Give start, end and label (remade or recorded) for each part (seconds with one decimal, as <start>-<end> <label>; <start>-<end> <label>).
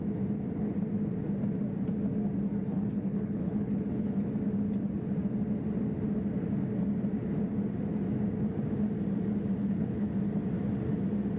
0.0-2.7 recorded; 2.7-4.2 remade; 4.2-9.6 recorded; 9.6-10.1 remade; 10.1-11.4 recorded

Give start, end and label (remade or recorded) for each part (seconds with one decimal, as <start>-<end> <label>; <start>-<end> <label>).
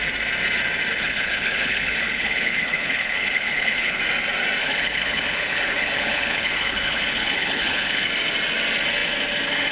0.0-0.9 recorded; 0.9-4.0 remade; 4.0-4.6 recorded; 4.6-8.1 remade; 8.1-9.7 recorded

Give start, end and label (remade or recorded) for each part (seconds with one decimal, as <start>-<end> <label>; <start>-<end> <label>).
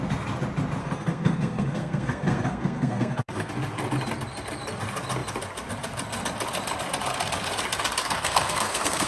0.0-0.8 recorded; 0.8-3.5 remade; 3.5-8.0 recorded; 8.0-9.1 remade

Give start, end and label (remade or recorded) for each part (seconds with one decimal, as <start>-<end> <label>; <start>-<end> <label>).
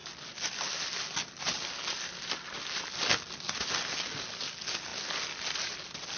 0.0-6.2 recorded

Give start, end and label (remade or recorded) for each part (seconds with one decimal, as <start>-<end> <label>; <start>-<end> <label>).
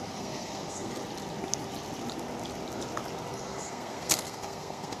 0.0-0.9 remade; 0.9-3.3 recorded; 3.3-5.0 remade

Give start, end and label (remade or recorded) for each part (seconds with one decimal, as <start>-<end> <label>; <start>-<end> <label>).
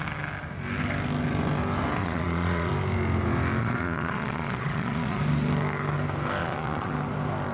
0.0-2.0 recorded; 2.0-2.7 remade; 2.7-3.6 recorded; 3.6-5.2 remade; 5.2-6.4 recorded; 6.4-6.9 remade; 6.9-7.5 recorded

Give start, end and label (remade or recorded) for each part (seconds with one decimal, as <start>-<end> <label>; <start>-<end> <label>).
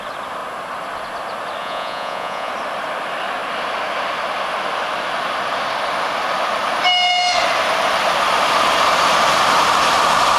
0.0-1.6 recorded; 1.6-2.5 remade; 2.5-10.4 recorded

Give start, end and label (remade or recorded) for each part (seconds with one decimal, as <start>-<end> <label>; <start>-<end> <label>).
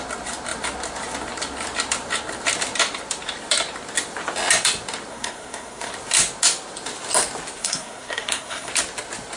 0.0-5.1 recorded; 5.1-5.9 remade; 5.9-7.6 recorded; 7.6-8.7 remade; 8.7-9.4 recorded